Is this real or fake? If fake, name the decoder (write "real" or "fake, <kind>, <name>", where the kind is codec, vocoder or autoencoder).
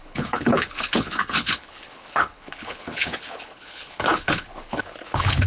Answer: fake, codec, HILCodec